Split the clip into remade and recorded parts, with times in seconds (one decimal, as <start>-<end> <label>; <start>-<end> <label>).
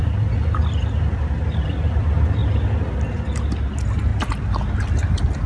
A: 0.0-5.5 recorded